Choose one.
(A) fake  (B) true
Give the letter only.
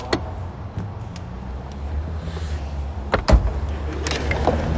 B